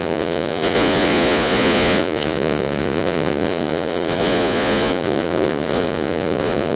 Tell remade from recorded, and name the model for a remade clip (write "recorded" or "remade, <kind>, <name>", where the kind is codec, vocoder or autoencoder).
remade, vocoder, Vocos